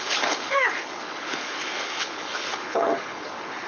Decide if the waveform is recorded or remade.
remade